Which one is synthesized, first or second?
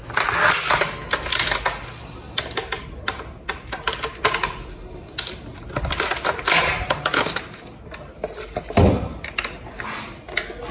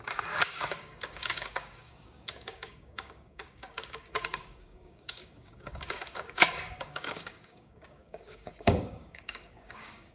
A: second